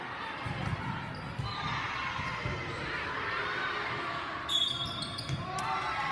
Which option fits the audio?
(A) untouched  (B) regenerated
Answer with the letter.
A